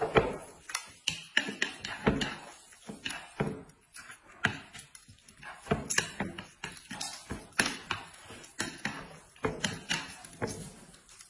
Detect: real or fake real